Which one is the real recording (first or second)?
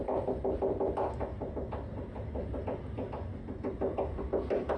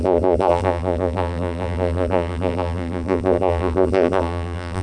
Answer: first